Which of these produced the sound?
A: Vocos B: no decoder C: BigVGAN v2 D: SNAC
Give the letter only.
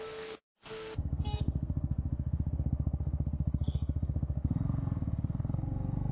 D